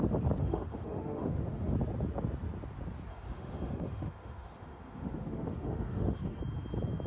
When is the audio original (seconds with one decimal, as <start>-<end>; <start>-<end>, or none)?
0.0-0.4; 1.7-3.1; 6.4-7.1